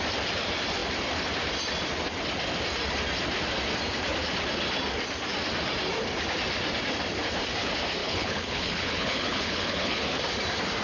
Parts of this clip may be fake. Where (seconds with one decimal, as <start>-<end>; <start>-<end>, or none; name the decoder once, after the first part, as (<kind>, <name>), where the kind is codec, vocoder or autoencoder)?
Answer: 8.0-10.2 (codec, HILCodec)